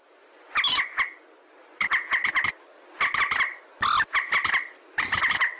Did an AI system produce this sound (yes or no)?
no